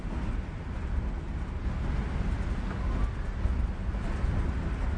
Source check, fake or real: real